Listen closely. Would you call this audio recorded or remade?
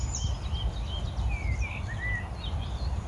recorded